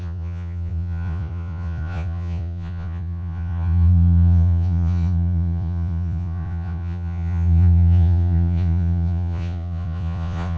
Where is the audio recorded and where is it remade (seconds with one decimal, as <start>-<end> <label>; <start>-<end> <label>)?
0.0-10.6 remade